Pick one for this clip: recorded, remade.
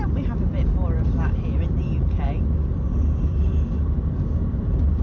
recorded